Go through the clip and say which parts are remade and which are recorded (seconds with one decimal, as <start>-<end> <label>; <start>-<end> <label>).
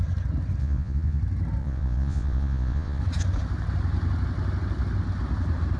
0.0-0.6 recorded; 0.6-1.2 remade; 1.2-1.6 recorded; 1.6-3.0 remade; 3.0-5.8 recorded